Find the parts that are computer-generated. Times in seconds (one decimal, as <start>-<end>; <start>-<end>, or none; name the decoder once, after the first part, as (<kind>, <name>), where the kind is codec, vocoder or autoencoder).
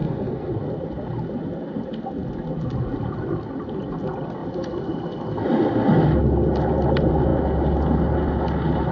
0.0-0.5 (codec, SNAC)